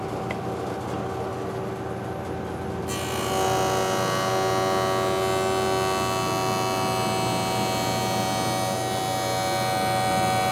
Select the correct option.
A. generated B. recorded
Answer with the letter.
B